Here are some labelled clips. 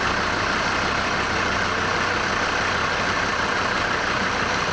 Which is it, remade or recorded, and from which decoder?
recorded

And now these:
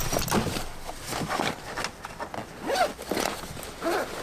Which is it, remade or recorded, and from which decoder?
recorded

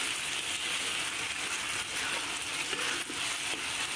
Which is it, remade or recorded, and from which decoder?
recorded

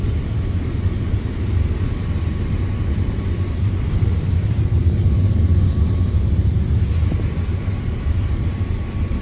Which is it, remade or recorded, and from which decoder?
remade, vocoder, BigVGAN v2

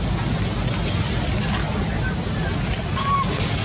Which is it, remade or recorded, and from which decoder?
recorded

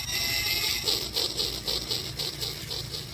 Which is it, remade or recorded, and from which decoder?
recorded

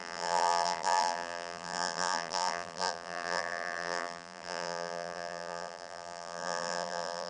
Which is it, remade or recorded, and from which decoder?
remade, vocoder, BigVGAN v2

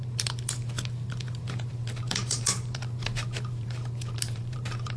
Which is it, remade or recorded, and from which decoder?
remade, vocoder, BigVGAN v2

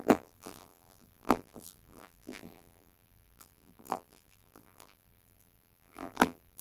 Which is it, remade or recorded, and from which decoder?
remade, vocoder, BigVGAN v2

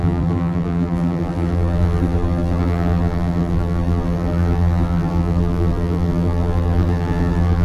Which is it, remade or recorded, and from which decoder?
remade, vocoder, BigVGAN v2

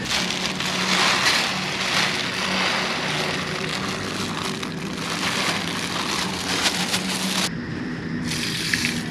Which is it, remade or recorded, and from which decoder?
recorded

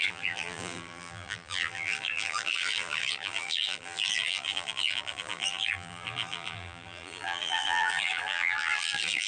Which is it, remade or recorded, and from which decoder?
remade, vocoder, BigVGAN v2